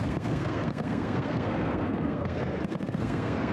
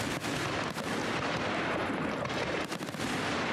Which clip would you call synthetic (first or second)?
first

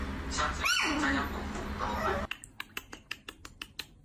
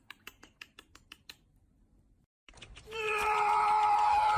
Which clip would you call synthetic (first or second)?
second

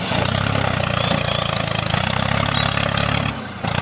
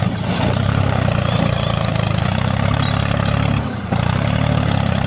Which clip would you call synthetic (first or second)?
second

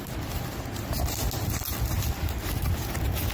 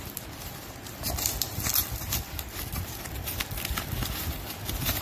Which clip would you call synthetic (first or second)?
second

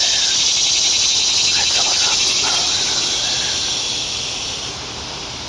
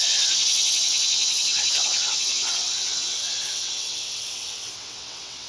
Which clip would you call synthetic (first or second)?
second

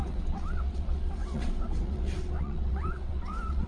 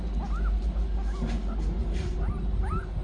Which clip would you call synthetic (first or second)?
first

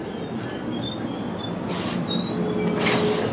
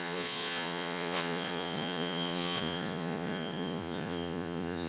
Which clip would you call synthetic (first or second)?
second